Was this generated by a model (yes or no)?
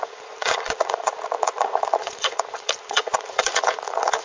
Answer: yes